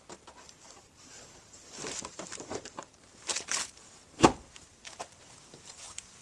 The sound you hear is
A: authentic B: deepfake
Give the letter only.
B